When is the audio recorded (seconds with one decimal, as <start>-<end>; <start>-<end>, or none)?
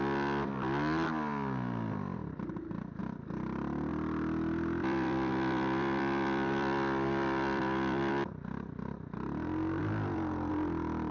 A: 0.0-3.9; 8.1-9.8; 10.5-11.1